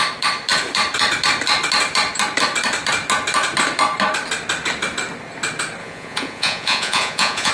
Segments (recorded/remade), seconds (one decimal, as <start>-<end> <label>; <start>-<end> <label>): 0.0-5.8 recorded; 5.8-7.5 remade